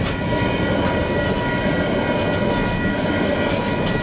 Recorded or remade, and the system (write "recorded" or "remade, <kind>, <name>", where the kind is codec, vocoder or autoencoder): recorded